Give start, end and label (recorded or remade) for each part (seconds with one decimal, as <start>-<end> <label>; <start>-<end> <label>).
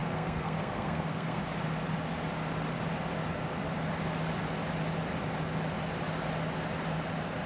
0.0-1.4 remade; 1.4-7.5 recorded